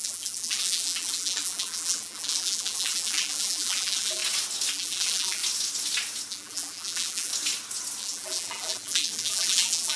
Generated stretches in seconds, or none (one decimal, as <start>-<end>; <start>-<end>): 0.0-4.2; 4.7-5.4; 6.3-7.3; 8.0-10.0